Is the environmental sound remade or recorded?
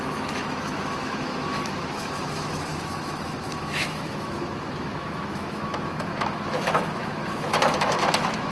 remade